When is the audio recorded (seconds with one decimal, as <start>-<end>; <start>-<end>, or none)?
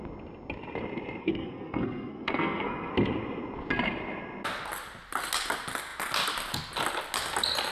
0.0-1.2; 2.9-7.7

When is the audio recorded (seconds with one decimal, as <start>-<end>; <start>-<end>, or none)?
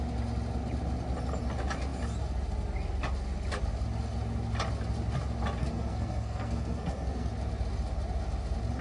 0.0-5.6; 7.3-8.8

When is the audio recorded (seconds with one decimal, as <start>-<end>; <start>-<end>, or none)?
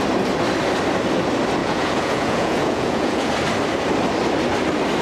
0.0-1.6; 3.3-5.0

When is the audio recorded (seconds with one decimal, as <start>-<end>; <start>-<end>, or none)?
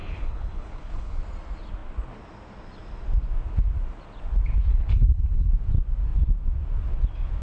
1.2-4.7; 5.5-7.4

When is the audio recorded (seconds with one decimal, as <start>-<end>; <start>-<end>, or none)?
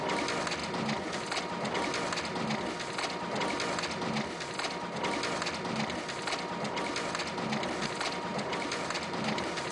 0.0-8.3